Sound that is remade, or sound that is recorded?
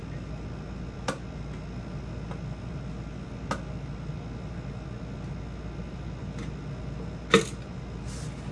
recorded